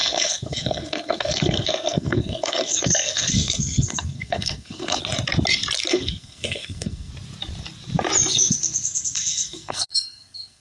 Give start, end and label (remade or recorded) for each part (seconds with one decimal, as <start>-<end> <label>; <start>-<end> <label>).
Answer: 0.0-5.0 remade; 5.0-5.9 recorded; 5.9-7.1 remade; 7.1-8.3 recorded; 8.3-10.6 remade